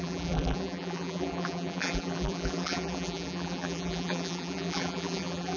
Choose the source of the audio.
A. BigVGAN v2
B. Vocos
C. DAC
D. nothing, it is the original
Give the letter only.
A